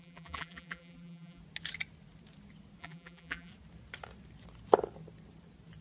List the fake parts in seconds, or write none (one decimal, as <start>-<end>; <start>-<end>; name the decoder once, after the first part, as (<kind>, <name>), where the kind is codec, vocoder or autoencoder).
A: 0.0-1.4 (vocoder, BigVGAN v2); 2.8-3.5